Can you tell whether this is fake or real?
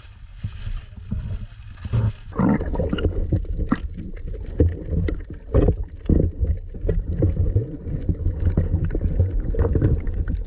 real